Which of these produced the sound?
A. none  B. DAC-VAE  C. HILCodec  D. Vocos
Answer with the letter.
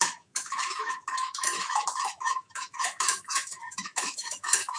B